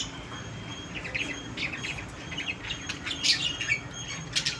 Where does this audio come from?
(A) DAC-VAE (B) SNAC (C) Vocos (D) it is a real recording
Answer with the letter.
D